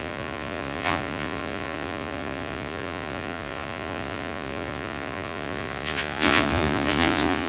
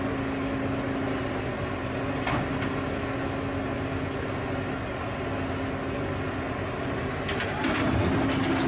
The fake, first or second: first